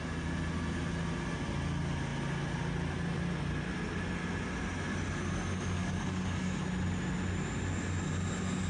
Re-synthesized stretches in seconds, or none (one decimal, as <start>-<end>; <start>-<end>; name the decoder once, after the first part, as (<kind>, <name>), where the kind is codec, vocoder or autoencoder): 5.8-6.6 (codec, DAC)